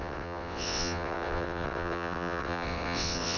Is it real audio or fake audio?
fake